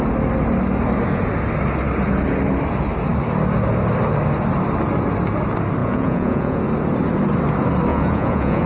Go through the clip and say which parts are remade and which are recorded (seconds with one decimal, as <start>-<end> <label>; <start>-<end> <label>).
0.0-5.8 recorded; 5.8-6.6 remade; 6.6-7.9 recorded; 7.9-8.7 remade